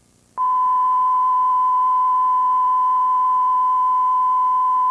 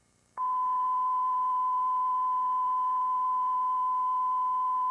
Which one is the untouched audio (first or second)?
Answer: first